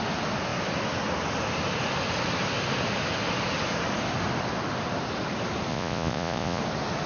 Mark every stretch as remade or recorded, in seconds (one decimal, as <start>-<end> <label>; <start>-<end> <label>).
0.0-5.7 recorded; 5.7-6.6 remade; 6.6-7.1 recorded